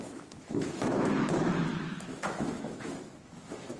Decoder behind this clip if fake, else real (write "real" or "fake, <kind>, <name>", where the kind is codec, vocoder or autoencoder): fake, autoencoder, DAC-VAE